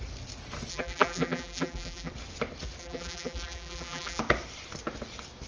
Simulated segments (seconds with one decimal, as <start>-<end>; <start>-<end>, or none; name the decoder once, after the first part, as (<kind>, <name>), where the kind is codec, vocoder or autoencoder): 0.7-2.1 (vocoder, BigVGAN v2); 2.8-4.2